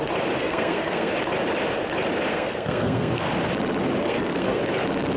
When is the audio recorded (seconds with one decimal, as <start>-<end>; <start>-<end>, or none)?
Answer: 0.0-0.4; 1.1-2.3; 3.3-4.0; 4.6-5.2